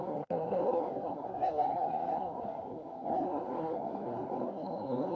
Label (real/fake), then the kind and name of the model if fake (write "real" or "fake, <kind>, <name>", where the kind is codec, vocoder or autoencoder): fake, codec, SNAC